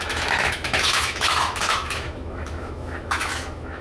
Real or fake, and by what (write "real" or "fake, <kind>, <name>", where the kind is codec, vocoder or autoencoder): fake, autoencoder, DAC-VAE